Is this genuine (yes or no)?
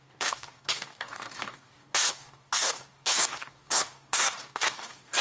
no